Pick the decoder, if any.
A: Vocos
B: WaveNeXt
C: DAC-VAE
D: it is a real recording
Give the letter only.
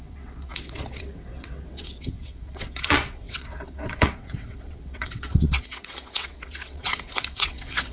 B